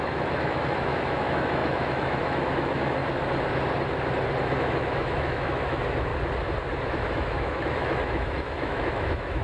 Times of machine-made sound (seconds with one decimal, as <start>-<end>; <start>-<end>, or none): 0.0-3.0; 4.4-6.1; 6.8-9.4